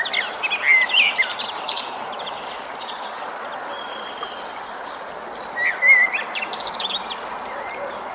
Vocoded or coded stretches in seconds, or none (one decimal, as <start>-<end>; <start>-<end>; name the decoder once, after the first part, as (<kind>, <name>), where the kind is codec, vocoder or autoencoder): 0.7-2.3 (vocoder, BigVGAN v2)